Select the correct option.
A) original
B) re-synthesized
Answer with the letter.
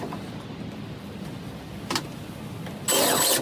A